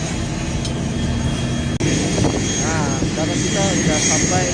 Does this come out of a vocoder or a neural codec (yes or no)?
no